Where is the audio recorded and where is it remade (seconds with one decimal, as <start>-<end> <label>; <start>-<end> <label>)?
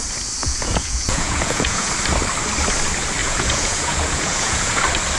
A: 0.0-0.4 recorded; 0.4-1.9 remade; 1.9-3.2 recorded; 3.2-4.8 remade; 4.8-5.2 recorded